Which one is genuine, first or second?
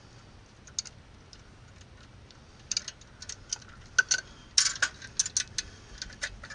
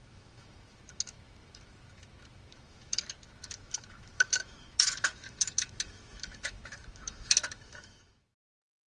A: first